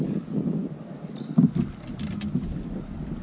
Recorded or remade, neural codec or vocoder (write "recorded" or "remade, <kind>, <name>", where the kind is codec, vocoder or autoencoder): recorded